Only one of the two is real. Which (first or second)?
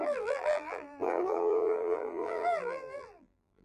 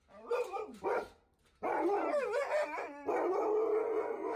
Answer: second